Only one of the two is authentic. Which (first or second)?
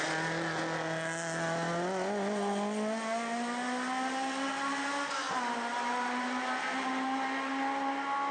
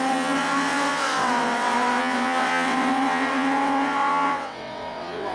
first